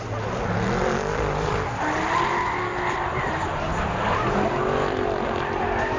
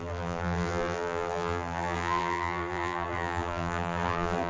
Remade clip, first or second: second